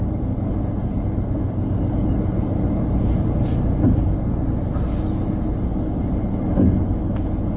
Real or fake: real